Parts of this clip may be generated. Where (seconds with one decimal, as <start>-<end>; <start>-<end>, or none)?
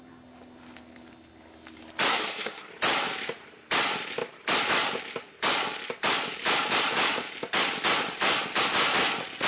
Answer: 2.1-2.7